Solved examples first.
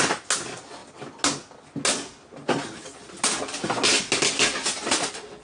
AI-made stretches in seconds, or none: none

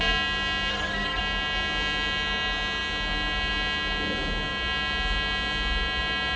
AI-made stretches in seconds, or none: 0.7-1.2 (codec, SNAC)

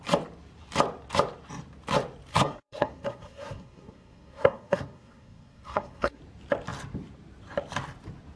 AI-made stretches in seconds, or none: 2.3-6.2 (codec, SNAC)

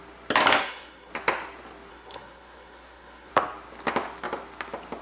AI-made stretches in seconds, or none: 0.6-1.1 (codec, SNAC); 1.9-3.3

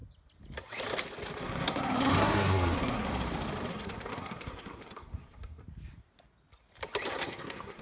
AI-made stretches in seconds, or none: 1.4-3.1 (codec, SNAC); 3.7-5.6; 7.1-7.8

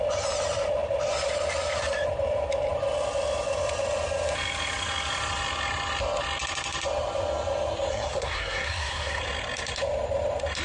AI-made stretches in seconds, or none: 7.9-9.2 (codec, SNAC)